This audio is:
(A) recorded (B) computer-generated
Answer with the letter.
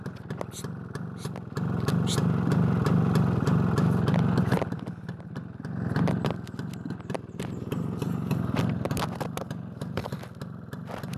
A